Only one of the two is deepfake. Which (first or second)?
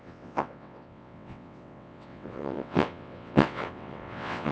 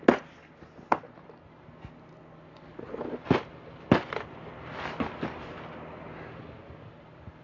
first